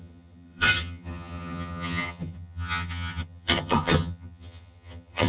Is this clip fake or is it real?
fake